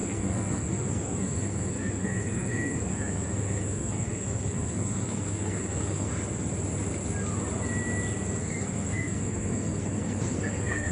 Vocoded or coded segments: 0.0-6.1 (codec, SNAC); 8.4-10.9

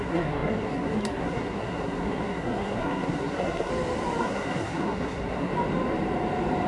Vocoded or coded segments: 0.0-3.7 (codec, SNAC); 4.2-5.5

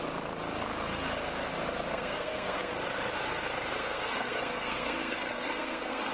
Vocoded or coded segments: 1.9-2.7 (codec, SNAC); 3.8-6.1

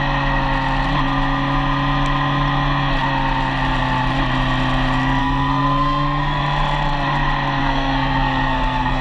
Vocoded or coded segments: 5.2-6.4 (codec, SNAC); 7.6-9.0

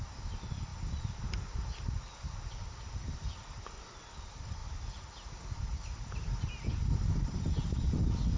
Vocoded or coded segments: none